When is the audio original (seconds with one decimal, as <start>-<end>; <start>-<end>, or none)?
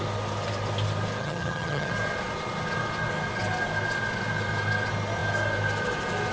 0.0-1.2; 1.9-6.3